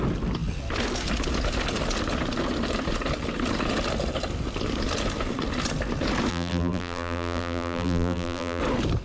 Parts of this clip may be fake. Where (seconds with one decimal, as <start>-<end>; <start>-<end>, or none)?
6.3-8.6